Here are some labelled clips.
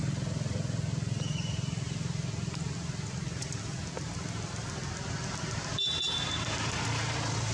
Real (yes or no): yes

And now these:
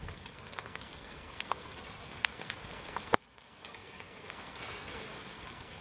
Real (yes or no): no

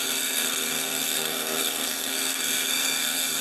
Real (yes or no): no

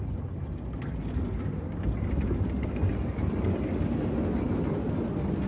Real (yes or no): yes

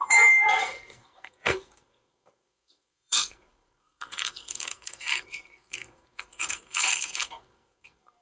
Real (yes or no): no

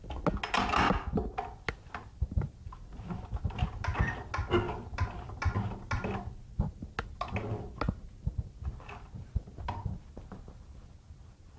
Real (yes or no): yes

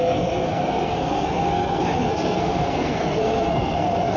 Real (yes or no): no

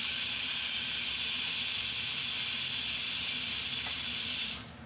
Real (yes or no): yes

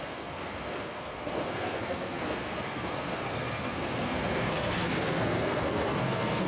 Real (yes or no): no